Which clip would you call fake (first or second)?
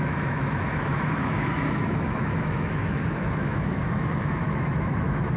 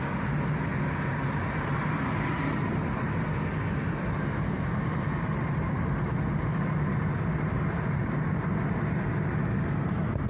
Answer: first